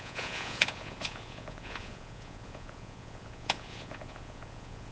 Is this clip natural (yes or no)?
no